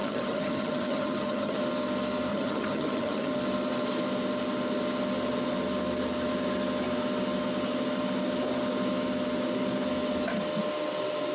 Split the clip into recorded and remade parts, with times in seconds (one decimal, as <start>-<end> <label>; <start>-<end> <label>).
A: 0.0-1.6 remade; 1.6-2.3 recorded; 2.3-3.3 remade; 3.3-11.3 recorded